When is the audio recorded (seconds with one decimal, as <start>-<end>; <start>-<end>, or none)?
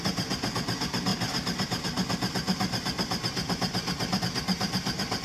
0.0-5.2